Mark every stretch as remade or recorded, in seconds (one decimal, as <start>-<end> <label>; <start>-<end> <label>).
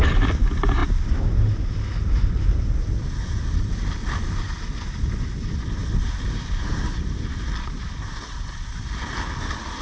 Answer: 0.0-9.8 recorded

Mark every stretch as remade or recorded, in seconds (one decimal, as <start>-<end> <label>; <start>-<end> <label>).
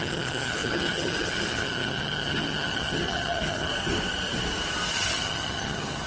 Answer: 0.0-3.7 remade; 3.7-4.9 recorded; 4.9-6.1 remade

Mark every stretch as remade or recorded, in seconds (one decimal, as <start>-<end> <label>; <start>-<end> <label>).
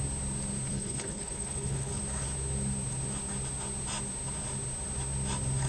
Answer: 0.0-0.7 recorded; 0.7-2.0 remade; 2.0-5.7 recorded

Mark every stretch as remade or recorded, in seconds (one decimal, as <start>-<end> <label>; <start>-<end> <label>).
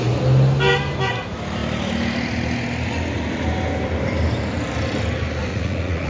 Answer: 0.0-5.5 recorded; 5.5-6.1 remade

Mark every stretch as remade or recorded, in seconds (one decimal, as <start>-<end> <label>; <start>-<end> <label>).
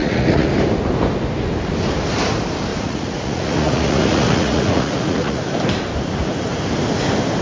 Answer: 0.0-0.5 remade; 0.5-2.7 recorded; 2.7-5.4 remade; 5.4-7.4 recorded